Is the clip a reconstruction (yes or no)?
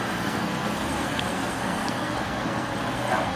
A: yes